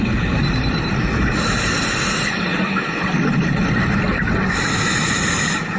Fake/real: real